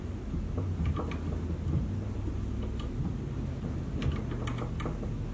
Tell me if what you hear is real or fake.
real